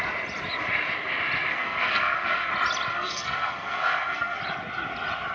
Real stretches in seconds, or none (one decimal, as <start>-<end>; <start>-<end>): 0.0-1.5; 2.5-2.9; 4.4-5.3